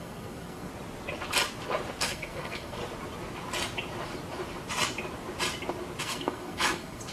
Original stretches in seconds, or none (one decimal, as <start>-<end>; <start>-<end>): 0.7-2.0; 2.8-6.0

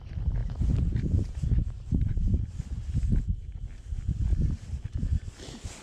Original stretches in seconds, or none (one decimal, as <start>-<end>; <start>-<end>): 0.0-0.4; 2.4-5.8